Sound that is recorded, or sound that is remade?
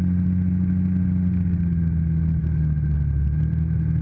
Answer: recorded